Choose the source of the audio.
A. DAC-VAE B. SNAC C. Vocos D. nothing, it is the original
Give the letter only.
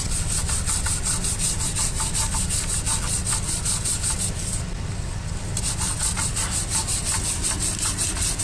D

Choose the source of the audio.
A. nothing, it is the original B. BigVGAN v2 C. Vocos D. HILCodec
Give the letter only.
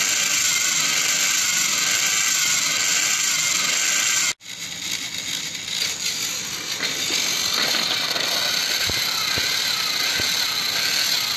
A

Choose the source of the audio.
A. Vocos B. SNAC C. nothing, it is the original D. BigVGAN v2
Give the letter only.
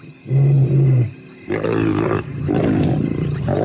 C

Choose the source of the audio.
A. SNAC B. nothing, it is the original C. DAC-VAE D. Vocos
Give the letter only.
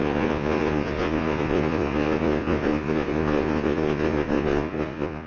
D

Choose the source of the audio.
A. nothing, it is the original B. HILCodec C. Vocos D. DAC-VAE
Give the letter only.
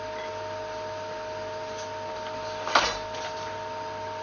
A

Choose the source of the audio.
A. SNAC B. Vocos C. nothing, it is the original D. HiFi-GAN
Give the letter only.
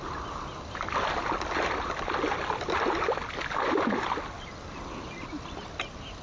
C